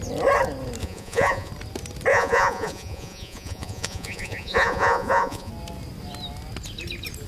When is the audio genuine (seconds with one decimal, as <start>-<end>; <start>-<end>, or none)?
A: 0.0-0.8; 1.5-2.1; 5.5-7.3